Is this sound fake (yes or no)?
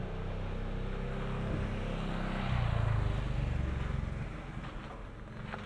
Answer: no